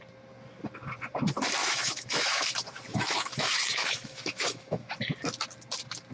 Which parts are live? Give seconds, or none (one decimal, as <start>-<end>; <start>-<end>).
0.0-1.6; 2.5-2.9; 4.9-6.1